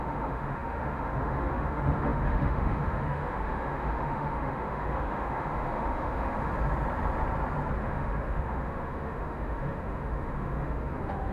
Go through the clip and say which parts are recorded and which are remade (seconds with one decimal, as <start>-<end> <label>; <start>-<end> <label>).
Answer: 0.0-6.5 remade; 6.5-7.8 recorded; 7.8-11.3 remade

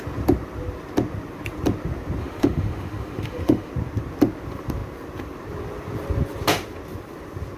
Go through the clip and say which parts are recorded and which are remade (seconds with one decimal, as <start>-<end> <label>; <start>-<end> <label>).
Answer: 0.0-2.2 recorded; 2.2-3.7 remade; 3.7-7.6 recorded

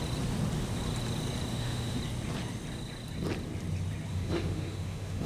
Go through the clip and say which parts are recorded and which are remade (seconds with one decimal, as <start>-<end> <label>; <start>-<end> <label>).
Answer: 0.0-1.5 recorded; 1.5-2.0 remade; 2.0-4.1 recorded; 4.1-5.3 remade

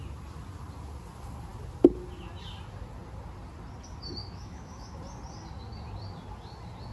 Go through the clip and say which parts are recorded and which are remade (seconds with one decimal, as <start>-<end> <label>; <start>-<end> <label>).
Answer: 0.0-4.2 recorded; 4.2-4.9 remade; 4.9-6.9 recorded

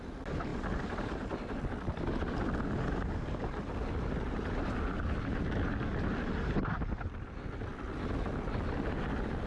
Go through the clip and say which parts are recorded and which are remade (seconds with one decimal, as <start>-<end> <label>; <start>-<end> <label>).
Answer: 0.0-9.5 recorded

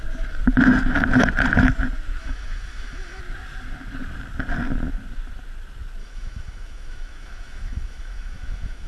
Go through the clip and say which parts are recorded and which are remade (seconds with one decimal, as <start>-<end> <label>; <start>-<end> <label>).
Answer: 0.0-2.2 recorded; 2.2-3.2 remade; 3.2-6.0 recorded; 6.0-8.9 remade

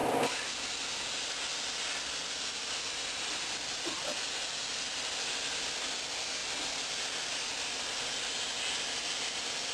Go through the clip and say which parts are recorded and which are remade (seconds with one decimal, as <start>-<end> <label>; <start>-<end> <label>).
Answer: 0.0-9.7 recorded

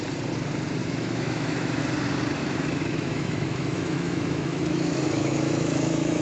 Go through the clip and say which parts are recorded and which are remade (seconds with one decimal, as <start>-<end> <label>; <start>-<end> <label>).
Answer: 0.0-0.8 recorded; 0.8-1.8 remade; 1.8-2.4 recorded; 2.4-6.2 remade